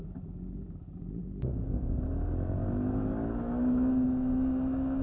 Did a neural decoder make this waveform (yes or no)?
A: no